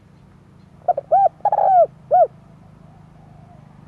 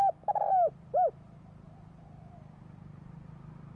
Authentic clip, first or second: first